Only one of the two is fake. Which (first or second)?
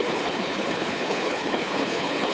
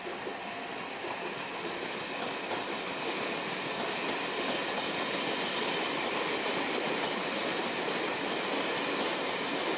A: first